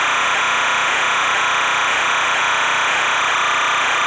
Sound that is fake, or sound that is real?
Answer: fake